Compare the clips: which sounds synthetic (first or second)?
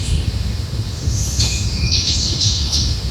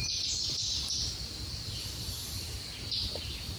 first